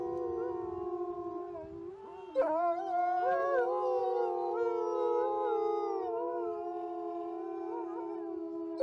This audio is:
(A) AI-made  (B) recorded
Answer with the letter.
B